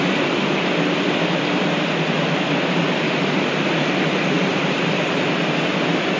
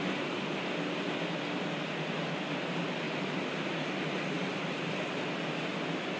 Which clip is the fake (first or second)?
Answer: first